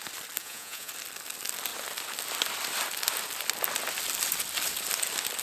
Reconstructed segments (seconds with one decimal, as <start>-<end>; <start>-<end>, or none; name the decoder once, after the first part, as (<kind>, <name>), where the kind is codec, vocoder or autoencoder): 0.4-0.9 (vocoder, Vocos)